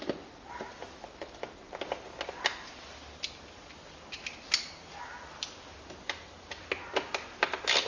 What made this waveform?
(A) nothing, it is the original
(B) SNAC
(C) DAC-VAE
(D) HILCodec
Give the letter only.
A